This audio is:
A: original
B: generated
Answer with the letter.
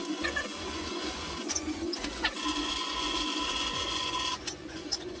B